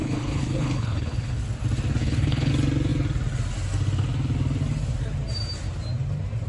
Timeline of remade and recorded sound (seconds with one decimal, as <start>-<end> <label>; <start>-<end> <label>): 0.0-1.4 remade; 1.4-2.0 recorded; 2.0-2.5 remade; 2.5-6.5 recorded